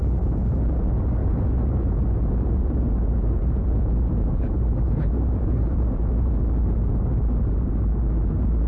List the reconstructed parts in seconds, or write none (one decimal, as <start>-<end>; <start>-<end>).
1.2-6.4